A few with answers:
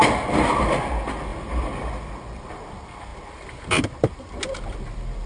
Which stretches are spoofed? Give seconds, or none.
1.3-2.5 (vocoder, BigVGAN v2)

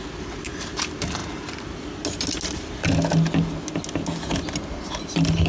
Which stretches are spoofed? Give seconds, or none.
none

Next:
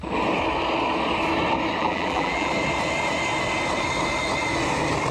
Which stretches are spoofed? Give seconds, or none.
1.8-2.5 (vocoder, BigVGAN v2)

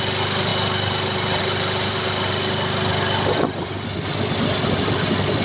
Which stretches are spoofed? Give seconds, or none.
none

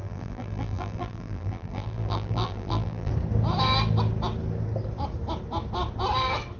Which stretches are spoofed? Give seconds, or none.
0.0-3.1 (vocoder, BigVGAN v2)

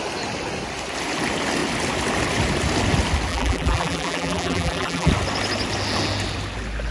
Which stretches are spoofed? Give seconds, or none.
3.3-5.1 (vocoder, BigVGAN v2)

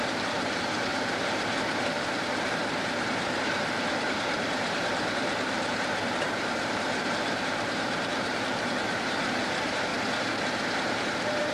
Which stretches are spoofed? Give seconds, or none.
0.0-9.9 (vocoder, BigVGAN v2); 10.9-11.5

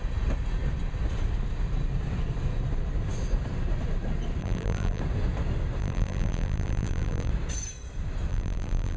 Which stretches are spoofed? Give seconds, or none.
4.4-5.0 (vocoder, BigVGAN v2); 5.8-7.3; 8.3-9.0